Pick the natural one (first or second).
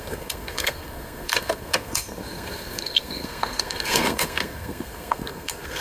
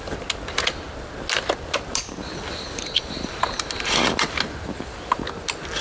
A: second